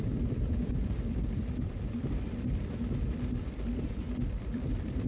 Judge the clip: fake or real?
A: fake